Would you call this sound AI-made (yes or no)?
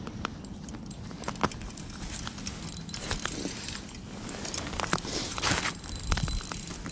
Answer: no